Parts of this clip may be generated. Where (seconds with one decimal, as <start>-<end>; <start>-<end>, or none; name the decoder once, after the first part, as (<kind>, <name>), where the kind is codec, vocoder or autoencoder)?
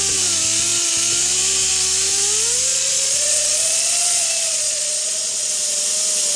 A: 2.7-5.5 (vocoder, Vocos)